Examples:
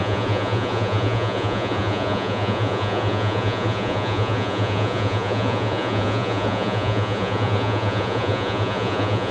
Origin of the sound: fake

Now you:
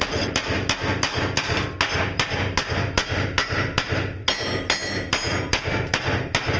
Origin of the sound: real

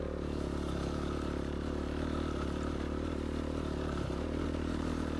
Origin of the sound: fake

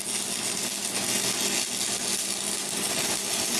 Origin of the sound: real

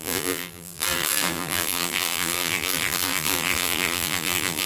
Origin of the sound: fake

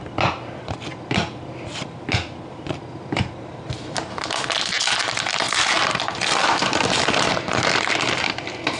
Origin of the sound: real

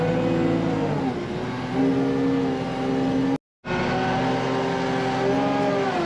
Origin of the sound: real